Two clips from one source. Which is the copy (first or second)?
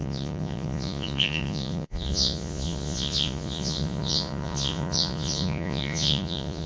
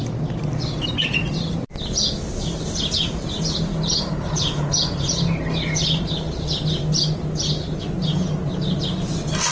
first